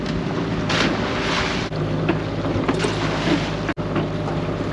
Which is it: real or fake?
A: real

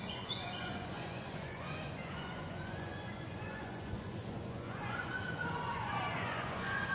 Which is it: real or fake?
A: fake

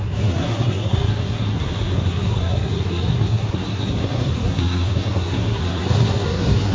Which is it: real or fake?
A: fake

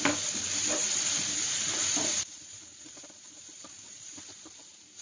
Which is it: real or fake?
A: fake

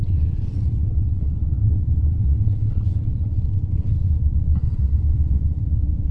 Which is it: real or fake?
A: fake